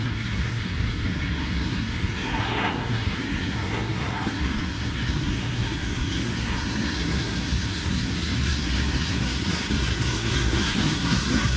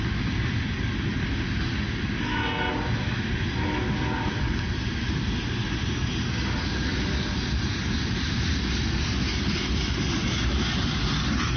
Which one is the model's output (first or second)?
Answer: first